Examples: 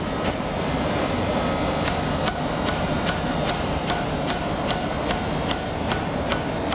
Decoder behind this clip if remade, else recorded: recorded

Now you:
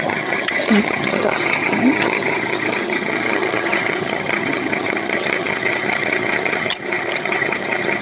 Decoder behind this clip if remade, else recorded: remade, vocoder, HiFi-GAN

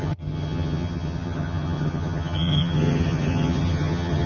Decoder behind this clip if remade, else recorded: remade, vocoder, HiFi-GAN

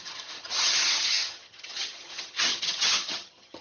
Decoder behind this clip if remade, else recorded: remade, vocoder, HiFi-GAN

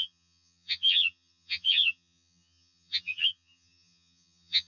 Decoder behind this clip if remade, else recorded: remade, vocoder, HiFi-GAN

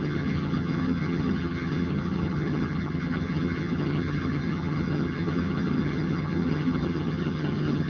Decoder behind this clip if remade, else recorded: remade, vocoder, HiFi-GAN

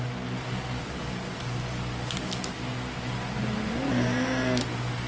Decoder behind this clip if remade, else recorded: recorded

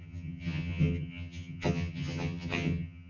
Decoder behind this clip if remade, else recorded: remade, vocoder, HiFi-GAN